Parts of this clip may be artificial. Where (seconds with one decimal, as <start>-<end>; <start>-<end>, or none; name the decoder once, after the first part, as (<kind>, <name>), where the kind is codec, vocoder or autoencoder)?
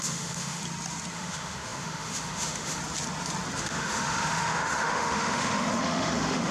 0.0-0.6 (autoencoder, DAC-VAE); 1.1-2.8; 3.6-6.5